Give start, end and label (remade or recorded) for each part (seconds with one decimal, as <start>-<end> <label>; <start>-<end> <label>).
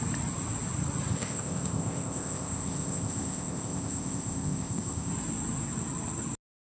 0.0-1.1 recorded; 1.1-5.1 remade; 5.1-6.7 recorded